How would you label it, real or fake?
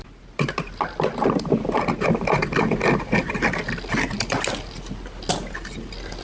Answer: real